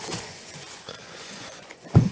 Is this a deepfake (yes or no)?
yes